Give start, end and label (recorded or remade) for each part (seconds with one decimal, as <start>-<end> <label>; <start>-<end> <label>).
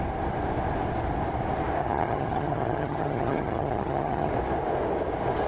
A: 0.0-1.8 recorded; 1.8-4.3 remade; 4.3-5.5 recorded